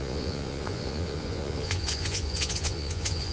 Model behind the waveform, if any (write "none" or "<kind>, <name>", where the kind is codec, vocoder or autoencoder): vocoder, Vocos